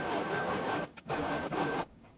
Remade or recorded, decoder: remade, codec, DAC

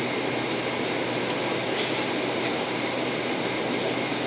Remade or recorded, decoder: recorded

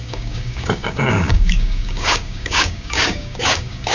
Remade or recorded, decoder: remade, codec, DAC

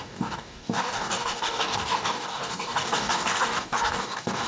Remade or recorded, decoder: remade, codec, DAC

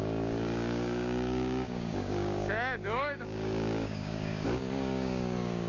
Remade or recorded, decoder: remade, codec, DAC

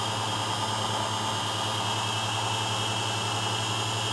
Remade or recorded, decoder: recorded